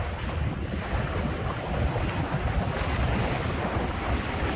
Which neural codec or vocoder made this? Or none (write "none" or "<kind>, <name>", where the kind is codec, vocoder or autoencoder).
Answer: none